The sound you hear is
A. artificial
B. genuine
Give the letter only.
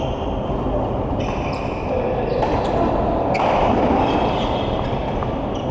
B